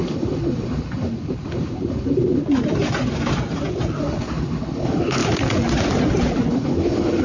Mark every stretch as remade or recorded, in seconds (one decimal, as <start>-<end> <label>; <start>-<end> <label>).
0.0-2.4 remade; 2.4-4.0 recorded; 4.0-5.2 remade; 5.2-6.5 recorded; 6.5-7.2 remade